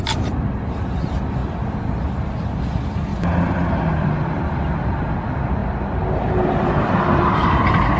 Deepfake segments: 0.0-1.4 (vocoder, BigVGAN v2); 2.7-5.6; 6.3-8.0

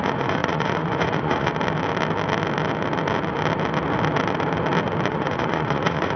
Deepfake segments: 0.0-1.5 (vocoder, Vocos); 5.1-6.2

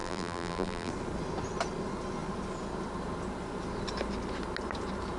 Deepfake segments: 0.0-0.9 (vocoder, BigVGAN v2)

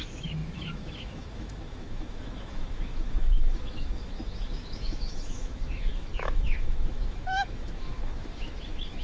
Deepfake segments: 0.0-9.0 (autoencoder, DAC-VAE)